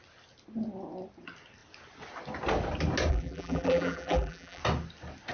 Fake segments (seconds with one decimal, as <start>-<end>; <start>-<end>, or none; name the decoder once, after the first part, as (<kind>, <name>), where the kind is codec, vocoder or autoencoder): 3.1-4.6 (vocoder, BigVGAN v2)